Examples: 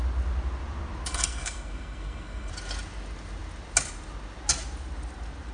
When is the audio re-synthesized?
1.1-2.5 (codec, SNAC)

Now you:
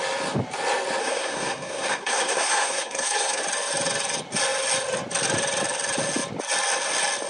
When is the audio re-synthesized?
1.0-3.4 (codec, SNAC)

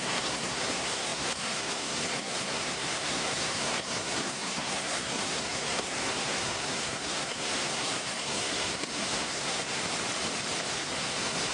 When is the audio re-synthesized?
0.0-9.8 (codec, SNAC); 10.7-11.5

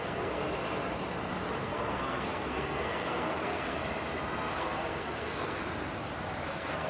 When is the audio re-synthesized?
0.0-0.4 (codec, SNAC); 1.6-3.8; 4.5-5.6; 6.5-6.9